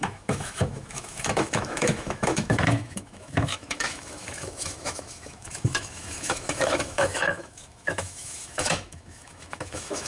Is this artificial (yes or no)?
yes